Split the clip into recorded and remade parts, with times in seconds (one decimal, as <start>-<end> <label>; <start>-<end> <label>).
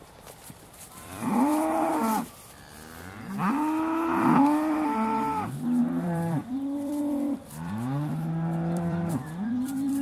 0.0-1.5 remade; 1.5-5.8 recorded; 5.8-10.0 remade